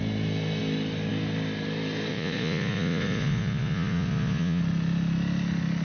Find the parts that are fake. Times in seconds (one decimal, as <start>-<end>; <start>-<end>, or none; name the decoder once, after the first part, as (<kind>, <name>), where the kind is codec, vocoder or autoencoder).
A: 2.1-4.6 (vocoder, Vocos)